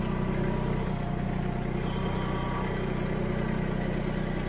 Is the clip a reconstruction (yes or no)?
no